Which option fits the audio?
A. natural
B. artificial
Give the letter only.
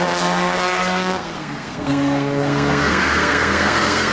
B